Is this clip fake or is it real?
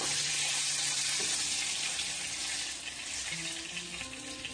real